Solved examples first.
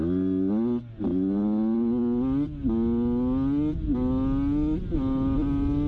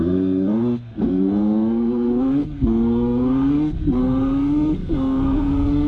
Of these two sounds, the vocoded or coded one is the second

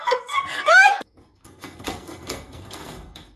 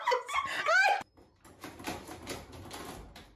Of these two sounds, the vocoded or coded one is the first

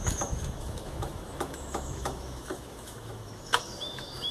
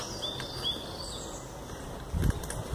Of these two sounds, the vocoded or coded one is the first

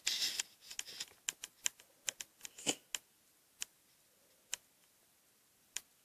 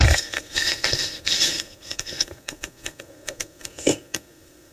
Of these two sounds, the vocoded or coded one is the second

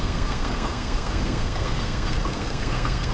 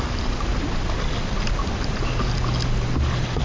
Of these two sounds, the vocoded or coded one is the first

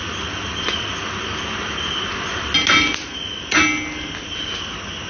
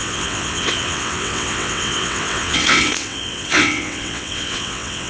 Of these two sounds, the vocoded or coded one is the second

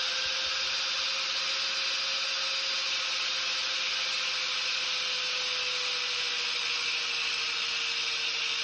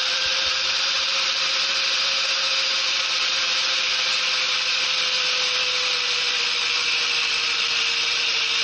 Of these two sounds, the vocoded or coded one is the second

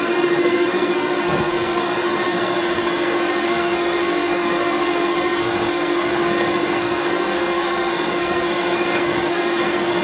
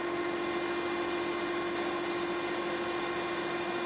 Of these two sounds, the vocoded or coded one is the first